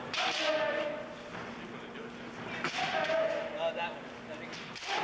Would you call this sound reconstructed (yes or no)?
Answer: no